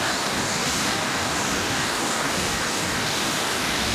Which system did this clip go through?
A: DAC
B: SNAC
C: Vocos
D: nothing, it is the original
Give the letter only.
A